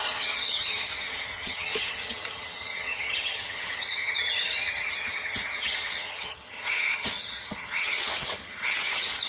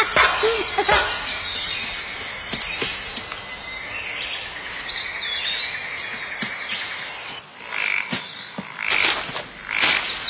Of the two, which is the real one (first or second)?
second